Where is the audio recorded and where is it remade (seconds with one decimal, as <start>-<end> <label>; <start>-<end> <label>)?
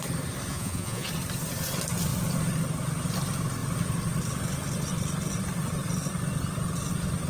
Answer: 0.0-0.5 recorded; 0.5-1.1 remade; 1.1-7.3 recorded